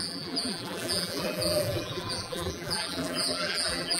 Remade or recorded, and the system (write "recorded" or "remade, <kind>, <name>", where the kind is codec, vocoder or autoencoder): remade, vocoder, BigVGAN v2